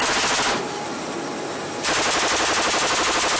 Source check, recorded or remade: recorded